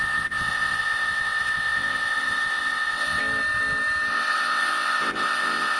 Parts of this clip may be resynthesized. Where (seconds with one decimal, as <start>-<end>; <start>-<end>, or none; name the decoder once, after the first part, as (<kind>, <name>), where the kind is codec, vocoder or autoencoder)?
0.0-3.2 (vocoder, WaveNeXt); 4.1-5.8